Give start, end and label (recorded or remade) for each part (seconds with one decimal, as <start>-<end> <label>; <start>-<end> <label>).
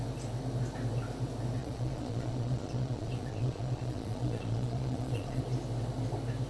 0.0-1.6 recorded; 1.6-5.4 remade; 5.4-6.5 recorded